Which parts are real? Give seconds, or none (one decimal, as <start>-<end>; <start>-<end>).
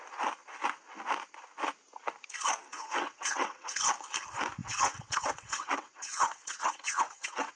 0.0-2.7; 3.8-4.6